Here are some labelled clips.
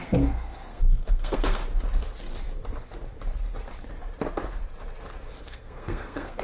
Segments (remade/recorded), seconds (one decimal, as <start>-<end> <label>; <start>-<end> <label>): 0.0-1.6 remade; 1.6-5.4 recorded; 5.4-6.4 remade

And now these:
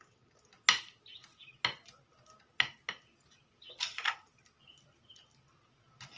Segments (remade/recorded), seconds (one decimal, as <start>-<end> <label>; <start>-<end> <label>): 0.0-6.2 recorded

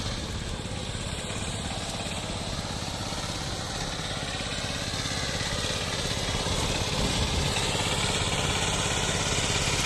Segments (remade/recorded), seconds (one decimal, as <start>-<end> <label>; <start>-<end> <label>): 0.0-9.9 recorded